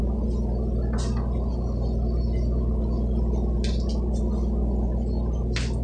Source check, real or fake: real